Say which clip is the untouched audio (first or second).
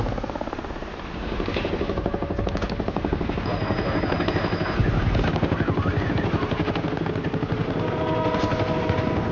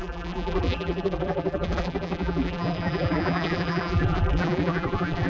first